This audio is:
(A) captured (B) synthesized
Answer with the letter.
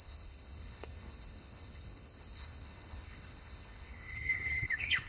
B